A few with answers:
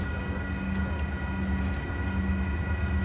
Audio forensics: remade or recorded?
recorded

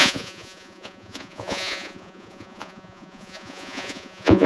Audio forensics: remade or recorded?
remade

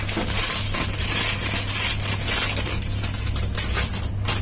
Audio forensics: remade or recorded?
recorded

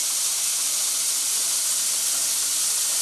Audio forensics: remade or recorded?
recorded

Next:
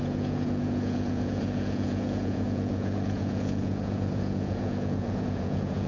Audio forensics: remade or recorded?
remade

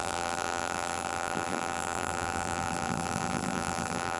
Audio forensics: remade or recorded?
remade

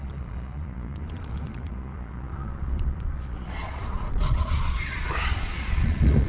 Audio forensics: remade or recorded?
remade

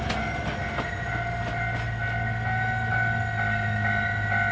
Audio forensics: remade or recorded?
recorded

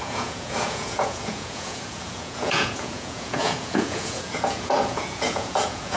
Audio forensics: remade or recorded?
remade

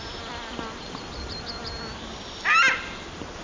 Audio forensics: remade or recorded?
recorded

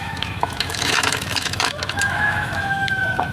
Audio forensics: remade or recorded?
remade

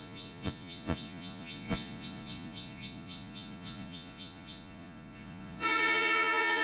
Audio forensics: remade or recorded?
remade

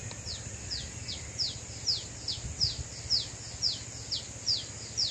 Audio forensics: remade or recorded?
recorded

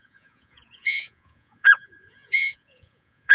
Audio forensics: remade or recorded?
remade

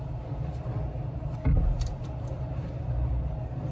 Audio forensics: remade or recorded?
remade